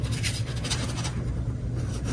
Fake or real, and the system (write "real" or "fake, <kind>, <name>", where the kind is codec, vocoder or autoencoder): real